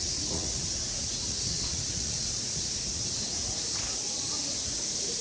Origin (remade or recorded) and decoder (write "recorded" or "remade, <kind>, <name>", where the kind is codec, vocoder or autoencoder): remade, vocoder, Vocos